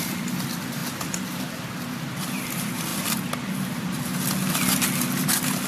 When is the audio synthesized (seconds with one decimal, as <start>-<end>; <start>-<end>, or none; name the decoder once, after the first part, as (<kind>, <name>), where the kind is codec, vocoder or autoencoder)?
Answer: 0.0-2.9 (vocoder, BigVGAN v2)